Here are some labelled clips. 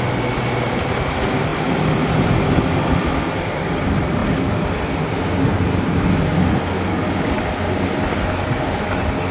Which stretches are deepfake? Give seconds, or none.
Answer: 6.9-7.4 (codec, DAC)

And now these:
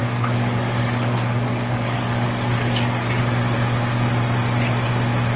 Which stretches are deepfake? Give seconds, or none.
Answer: 0.0-3.2 (codec, DAC)

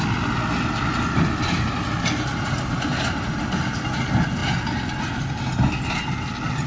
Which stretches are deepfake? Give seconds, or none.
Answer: none

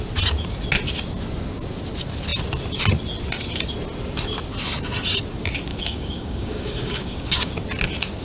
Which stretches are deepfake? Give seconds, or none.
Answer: 5.7-7.5 (codec, DAC)

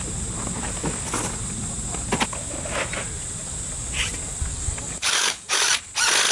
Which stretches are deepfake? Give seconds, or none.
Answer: 4.5-5.7 (codec, DAC)

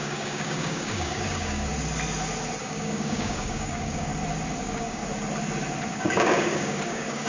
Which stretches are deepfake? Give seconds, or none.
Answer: 0.0-1.7 (codec, DAC); 2.6-4.1; 4.6-5.0; 5.9-7.3